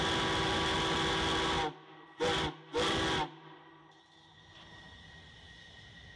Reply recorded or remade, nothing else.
recorded